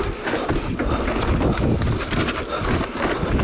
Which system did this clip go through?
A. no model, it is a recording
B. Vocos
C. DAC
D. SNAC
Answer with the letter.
A